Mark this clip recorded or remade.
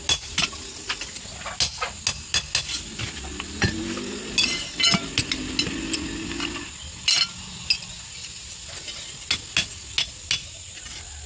recorded